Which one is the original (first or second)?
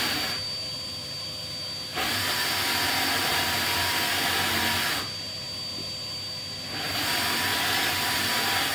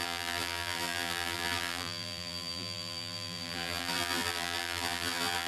first